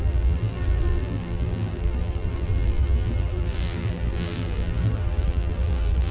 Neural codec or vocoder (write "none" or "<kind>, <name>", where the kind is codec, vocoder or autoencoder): vocoder, BigVGAN v2